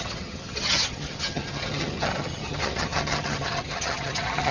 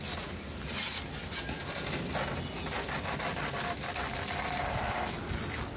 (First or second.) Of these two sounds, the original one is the second